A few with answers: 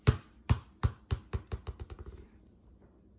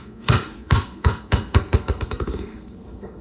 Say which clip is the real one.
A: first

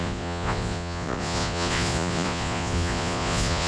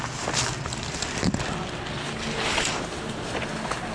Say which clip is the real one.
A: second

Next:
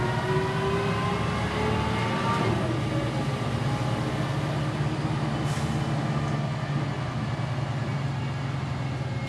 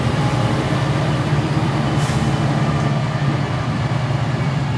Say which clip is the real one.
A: first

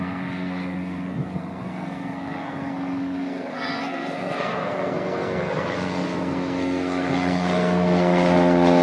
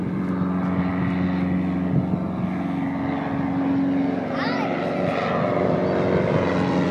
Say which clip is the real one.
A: second